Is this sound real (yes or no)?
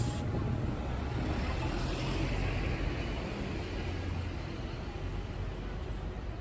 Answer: yes